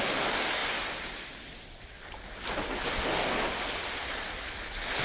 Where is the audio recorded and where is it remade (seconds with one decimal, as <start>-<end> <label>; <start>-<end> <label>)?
0.0-5.0 recorded